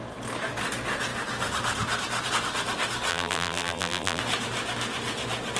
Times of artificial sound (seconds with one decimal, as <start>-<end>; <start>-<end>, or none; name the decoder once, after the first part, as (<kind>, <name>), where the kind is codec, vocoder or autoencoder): 3.1-4.2 (vocoder, BigVGAN v2)